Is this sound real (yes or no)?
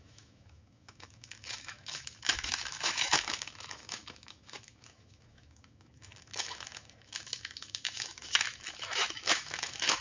no